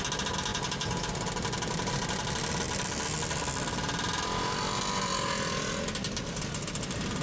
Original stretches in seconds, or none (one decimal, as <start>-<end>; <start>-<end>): 0.0-7.2